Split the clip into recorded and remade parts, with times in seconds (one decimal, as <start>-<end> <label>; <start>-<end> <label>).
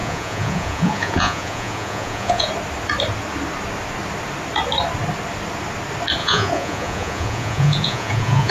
0.0-2.5 remade; 2.5-6.2 recorded; 6.2-8.5 remade